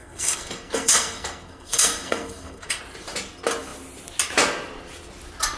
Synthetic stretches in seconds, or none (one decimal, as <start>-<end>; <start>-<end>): 0.0-2.8